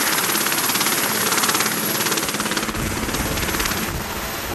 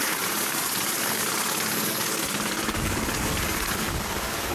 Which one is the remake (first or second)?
second